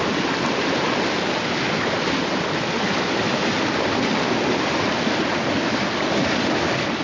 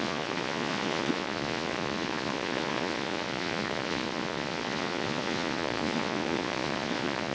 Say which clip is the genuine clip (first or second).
first